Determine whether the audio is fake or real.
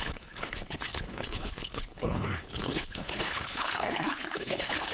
fake